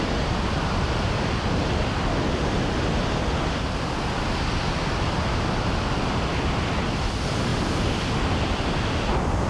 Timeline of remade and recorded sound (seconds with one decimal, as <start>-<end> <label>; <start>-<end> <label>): 0.0-9.5 recorded